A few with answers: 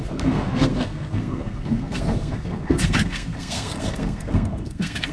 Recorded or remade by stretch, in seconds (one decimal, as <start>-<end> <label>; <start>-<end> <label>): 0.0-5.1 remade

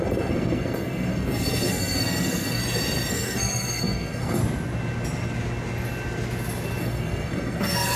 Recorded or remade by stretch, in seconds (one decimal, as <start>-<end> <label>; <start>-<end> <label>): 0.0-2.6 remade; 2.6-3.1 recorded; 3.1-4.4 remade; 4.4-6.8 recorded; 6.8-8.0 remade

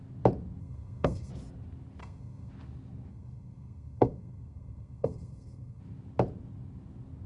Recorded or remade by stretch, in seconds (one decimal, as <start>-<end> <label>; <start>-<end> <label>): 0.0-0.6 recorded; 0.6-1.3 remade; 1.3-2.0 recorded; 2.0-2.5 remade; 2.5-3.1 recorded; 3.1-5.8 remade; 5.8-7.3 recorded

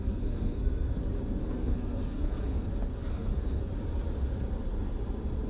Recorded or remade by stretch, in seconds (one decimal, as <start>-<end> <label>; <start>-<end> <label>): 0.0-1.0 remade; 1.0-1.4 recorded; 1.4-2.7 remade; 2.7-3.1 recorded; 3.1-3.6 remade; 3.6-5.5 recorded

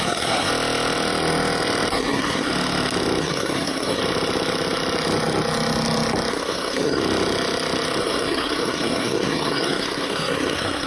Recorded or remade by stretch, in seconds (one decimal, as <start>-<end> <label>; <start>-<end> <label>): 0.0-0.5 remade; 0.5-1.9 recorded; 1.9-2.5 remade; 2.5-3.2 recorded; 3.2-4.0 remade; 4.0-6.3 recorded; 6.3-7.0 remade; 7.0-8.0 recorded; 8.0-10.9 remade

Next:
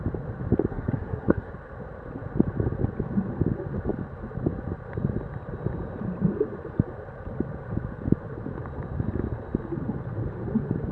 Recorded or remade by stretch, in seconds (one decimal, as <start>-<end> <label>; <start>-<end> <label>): 0.0-0.7 recorded; 0.7-1.5 remade; 1.5-10.9 recorded

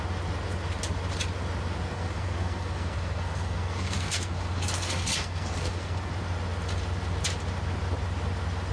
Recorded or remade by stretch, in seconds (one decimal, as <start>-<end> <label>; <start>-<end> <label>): 0.0-1.9 recorded; 1.9-6.1 remade; 6.1-8.7 recorded